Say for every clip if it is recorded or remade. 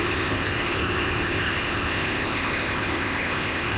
remade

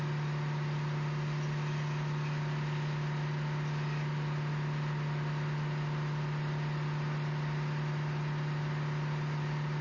recorded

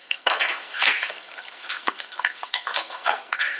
remade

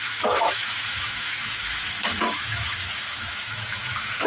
remade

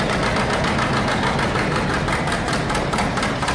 recorded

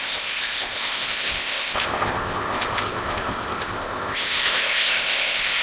remade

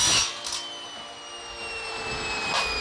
recorded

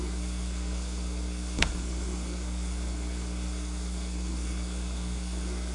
remade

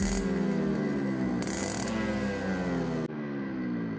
recorded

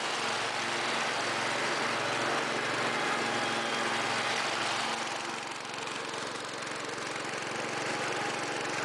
recorded